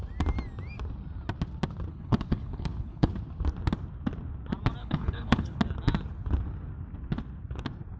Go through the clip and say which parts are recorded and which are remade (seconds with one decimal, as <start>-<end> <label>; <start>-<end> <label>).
0.0-1.9 recorded; 1.9-3.1 remade; 3.1-4.8 recorded; 4.8-5.6 remade; 5.6-8.0 recorded